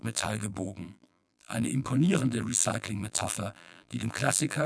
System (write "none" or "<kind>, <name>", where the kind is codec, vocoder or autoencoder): vocoder, BigVGAN v2